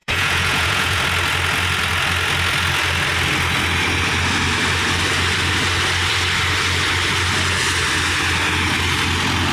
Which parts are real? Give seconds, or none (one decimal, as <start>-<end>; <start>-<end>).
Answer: 1.0-9.5